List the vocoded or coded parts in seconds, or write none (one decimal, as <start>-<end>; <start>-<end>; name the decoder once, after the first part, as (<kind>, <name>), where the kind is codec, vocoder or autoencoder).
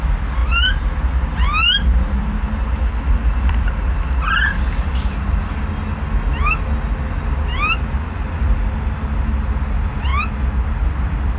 none